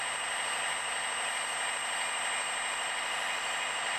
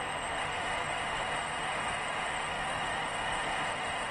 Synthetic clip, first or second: second